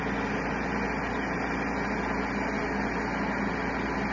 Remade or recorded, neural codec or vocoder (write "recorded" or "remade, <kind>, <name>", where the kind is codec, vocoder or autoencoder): recorded